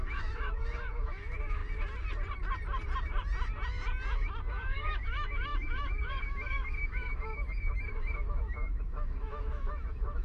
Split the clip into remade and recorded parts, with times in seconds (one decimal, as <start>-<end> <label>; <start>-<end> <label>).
0.0-1.6 remade; 1.6-4.5 recorded; 4.5-10.2 remade